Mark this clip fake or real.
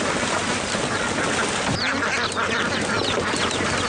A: real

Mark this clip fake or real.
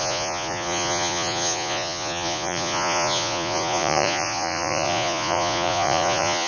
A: fake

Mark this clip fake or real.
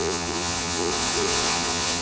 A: fake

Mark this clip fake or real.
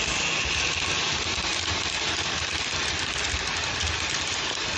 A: real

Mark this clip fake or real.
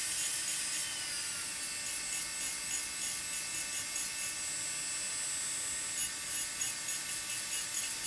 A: real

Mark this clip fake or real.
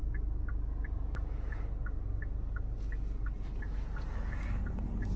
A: real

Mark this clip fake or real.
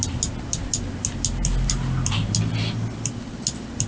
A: real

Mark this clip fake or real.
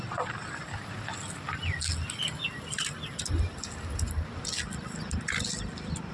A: real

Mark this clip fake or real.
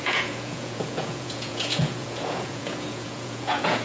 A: fake